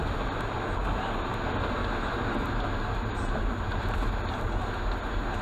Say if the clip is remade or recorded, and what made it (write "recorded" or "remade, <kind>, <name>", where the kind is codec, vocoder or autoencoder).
recorded